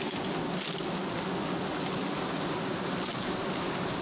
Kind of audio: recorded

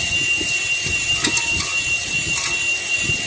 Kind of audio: recorded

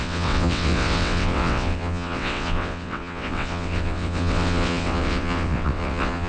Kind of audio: remade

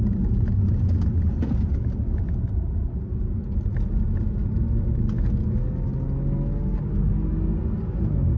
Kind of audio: recorded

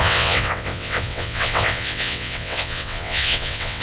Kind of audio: remade